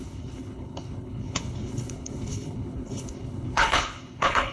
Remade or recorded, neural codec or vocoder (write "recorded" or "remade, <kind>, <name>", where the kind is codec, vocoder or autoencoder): remade, codec, HILCodec